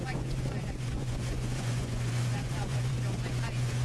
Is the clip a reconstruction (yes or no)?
yes